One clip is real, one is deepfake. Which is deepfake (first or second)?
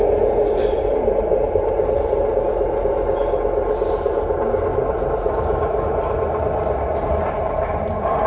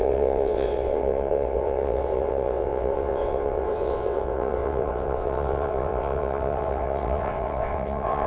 second